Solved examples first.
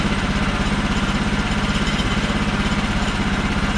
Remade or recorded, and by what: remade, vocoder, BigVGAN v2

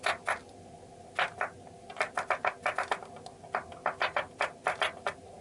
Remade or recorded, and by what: recorded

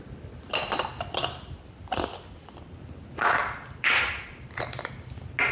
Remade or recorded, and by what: recorded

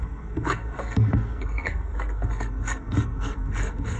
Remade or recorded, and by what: remade, codec, SNAC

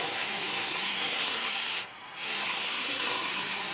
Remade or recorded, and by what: remade, codec, SNAC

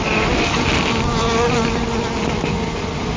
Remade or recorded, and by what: recorded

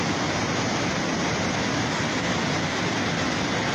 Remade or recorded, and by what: recorded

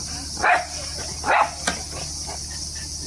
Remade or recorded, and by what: recorded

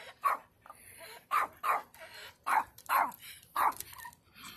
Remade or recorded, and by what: recorded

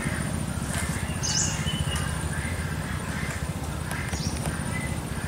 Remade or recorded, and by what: recorded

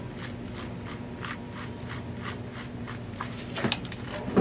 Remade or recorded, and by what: recorded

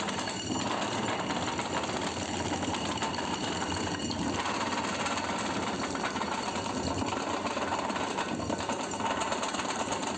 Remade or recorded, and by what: recorded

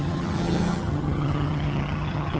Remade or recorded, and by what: remade, vocoder, HiFi-GAN